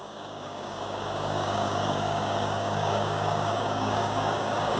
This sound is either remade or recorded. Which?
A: remade